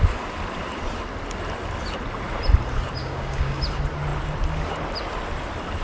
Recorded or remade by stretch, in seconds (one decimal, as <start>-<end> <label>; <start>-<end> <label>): 0.0-3.0 recorded; 3.0-3.6 remade; 3.6-5.8 recorded